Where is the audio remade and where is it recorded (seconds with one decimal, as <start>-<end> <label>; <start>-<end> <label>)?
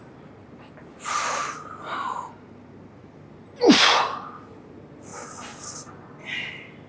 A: 0.0-6.9 recorded